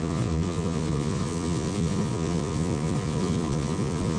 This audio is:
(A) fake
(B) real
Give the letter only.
A